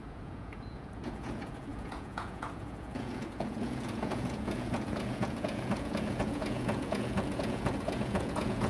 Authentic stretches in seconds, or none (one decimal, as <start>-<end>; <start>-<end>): none